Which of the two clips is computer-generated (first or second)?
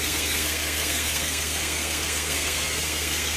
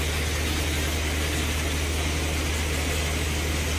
first